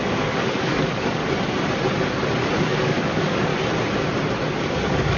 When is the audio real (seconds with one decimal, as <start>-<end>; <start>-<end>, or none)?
1.2-2.6; 3.5-4.6